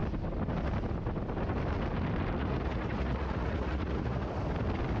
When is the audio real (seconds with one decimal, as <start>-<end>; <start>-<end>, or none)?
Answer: 0.0-2.4; 4.3-5.0